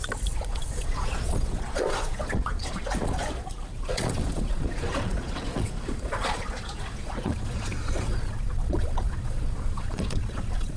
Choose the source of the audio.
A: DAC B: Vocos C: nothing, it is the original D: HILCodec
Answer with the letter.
B